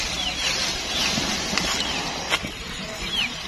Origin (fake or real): fake